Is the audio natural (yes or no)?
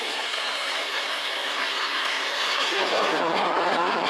no